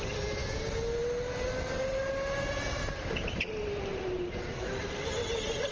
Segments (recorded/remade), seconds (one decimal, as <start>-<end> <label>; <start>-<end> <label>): 0.0-5.7 recorded